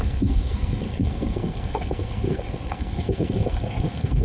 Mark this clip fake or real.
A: fake